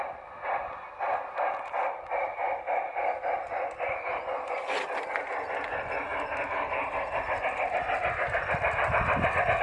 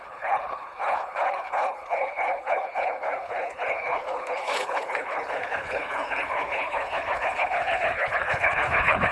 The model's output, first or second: second